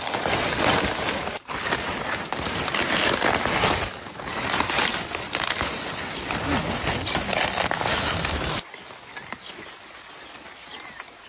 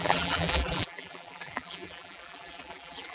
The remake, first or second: second